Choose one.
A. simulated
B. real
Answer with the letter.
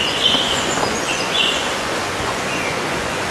A